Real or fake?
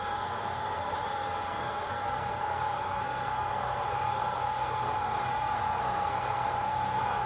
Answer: fake